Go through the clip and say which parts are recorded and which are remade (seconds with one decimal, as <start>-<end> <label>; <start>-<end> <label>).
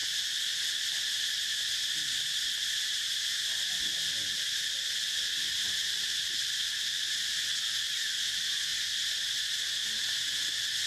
0.0-10.9 recorded